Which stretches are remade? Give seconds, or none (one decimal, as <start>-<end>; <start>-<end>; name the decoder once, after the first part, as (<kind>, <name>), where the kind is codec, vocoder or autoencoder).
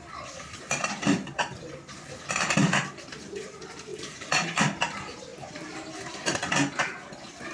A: 3.9-4.6 (vocoder, BigVGAN v2); 5.3-5.9